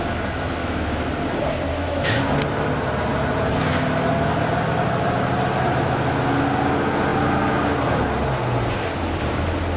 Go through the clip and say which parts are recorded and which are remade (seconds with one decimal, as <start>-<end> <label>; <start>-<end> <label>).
0.0-0.6 recorded; 0.6-1.1 remade; 1.1-1.7 recorded; 1.7-2.2 remade; 2.2-9.8 recorded